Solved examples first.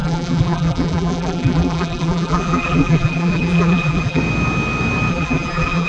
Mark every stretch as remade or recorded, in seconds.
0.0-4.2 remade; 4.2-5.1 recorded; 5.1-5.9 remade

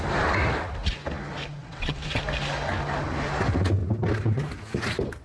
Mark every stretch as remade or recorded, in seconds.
0.0-1.6 recorded; 1.6-2.2 remade; 2.2-5.2 recorded

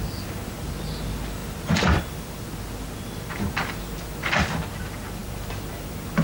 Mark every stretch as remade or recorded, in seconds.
0.0-1.4 recorded; 1.4-2.0 remade; 2.0-6.2 recorded